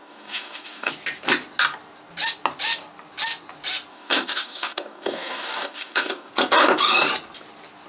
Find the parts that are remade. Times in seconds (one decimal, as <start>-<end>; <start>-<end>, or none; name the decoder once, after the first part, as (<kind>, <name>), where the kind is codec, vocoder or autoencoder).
0.0-0.9 (codec, DAC); 3.9-6.3